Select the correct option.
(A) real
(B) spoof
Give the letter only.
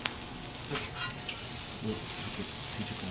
A